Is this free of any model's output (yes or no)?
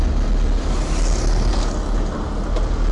yes